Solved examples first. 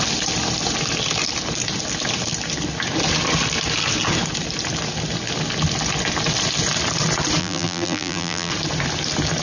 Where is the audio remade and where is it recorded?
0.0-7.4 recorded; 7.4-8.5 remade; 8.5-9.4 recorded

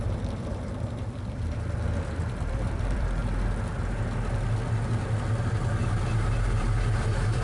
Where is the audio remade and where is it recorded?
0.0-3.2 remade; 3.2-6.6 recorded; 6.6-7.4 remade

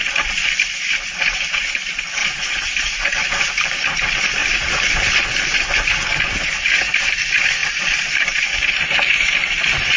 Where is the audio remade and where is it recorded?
0.0-2.2 recorded; 2.2-3.7 remade; 3.7-4.4 recorded; 4.4-5.1 remade; 5.1-7.6 recorded; 7.6-9.0 remade; 9.0-10.0 recorded